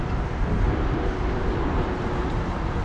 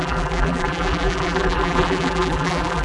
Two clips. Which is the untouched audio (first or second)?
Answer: first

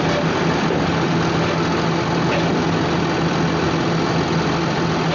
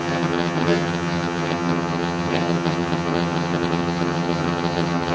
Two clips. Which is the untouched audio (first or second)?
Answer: first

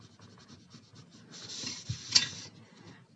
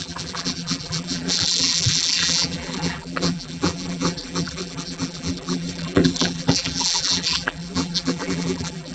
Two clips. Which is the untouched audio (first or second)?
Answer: first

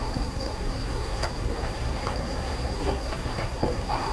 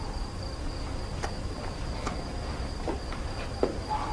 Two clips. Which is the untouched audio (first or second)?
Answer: second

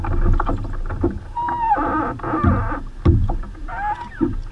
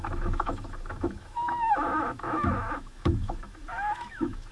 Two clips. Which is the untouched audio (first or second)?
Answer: first